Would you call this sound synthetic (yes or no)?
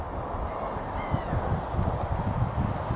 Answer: no